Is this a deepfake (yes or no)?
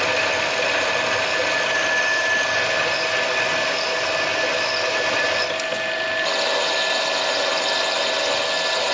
no